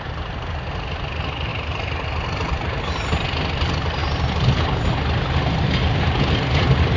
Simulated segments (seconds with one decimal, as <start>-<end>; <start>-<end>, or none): none